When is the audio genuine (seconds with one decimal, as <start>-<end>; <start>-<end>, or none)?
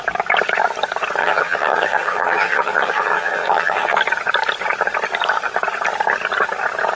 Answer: 0.0-1.2; 4.0-6.9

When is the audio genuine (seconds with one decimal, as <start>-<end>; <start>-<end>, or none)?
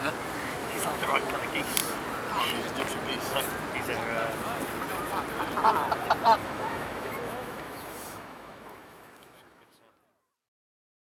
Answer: 0.0-0.6; 1.3-6.4; 9.9-11.0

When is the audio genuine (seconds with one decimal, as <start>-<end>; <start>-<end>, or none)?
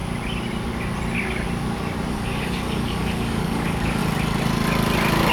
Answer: 0.0-2.1; 4.0-5.3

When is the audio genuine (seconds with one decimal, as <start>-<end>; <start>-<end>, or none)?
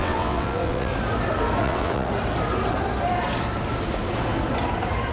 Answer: 0.9-1.6; 2.1-5.1